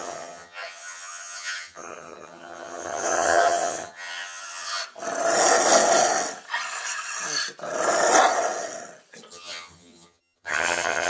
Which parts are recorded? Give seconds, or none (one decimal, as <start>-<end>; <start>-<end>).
4.8-9.3